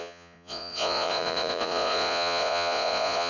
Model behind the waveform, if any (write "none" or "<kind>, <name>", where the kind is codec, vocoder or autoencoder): vocoder, Vocos